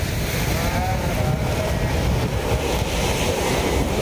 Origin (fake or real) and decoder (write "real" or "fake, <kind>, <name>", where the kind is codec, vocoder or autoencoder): real